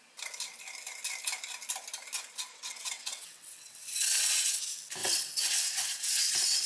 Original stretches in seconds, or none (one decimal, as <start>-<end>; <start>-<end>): 0.0-2.5; 4.6-5.0; 6.3-6.7